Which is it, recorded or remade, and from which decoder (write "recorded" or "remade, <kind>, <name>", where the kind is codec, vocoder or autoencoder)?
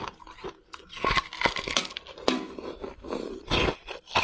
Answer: recorded